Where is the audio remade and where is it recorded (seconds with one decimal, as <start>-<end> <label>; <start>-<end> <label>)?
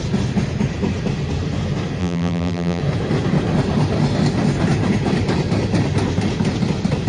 0.0-2.0 recorded; 2.0-2.8 remade; 2.8-7.1 recorded